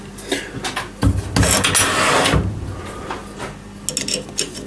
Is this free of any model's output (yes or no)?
yes